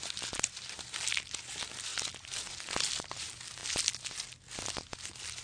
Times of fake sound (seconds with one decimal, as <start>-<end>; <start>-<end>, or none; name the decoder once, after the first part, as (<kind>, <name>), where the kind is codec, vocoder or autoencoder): none